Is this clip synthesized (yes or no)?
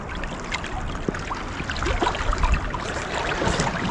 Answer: no